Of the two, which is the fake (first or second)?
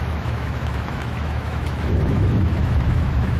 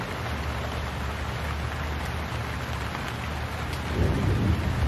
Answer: first